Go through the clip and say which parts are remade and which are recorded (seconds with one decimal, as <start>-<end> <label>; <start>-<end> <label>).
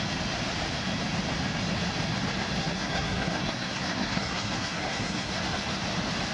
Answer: 0.0-2.6 recorded; 2.6-5.4 remade; 5.4-6.3 recorded